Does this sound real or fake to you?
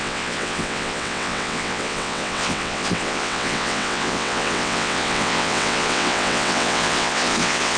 fake